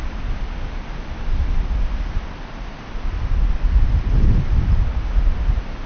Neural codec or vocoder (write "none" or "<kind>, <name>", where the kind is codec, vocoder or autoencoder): none